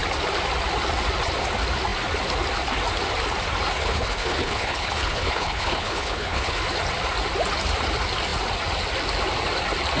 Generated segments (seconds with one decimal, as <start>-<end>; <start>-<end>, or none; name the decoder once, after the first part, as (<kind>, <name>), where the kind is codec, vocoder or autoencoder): 3.8-6.6 (codec, HILCodec)